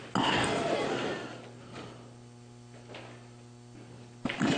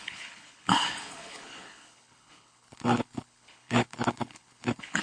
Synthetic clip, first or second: second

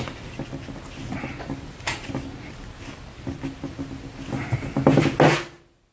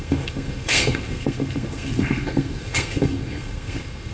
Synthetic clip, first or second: second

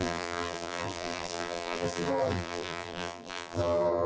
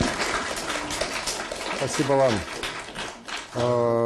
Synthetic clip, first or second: first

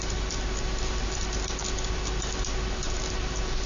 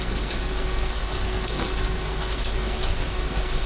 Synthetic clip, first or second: second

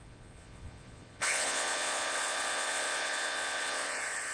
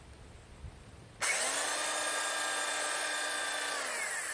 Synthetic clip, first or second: first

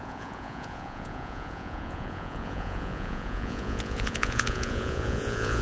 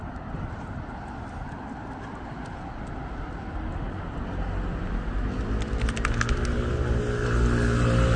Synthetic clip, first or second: first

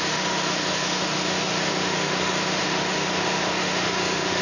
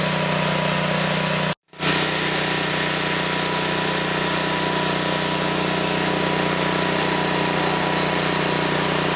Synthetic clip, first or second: first